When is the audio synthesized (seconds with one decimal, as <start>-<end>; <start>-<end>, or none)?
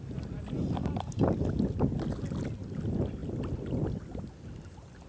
none